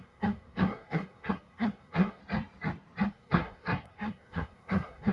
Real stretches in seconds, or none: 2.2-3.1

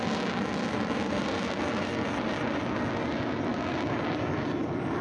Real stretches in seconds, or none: 0.0-5.0

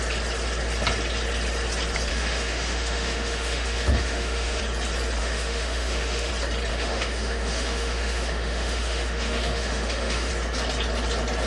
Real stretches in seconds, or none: 0.0-2.1; 4.6-5.2; 6.3-6.7; 10.3-11.5

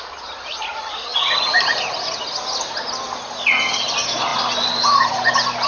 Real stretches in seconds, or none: 0.0-5.7

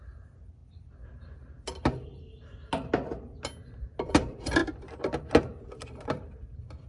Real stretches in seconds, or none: 0.0-6.9

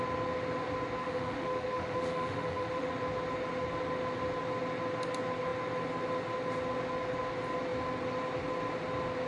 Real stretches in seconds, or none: 0.0-1.0; 2.9-9.3